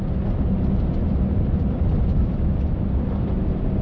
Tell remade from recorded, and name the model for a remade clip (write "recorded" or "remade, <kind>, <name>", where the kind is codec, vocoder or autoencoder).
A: recorded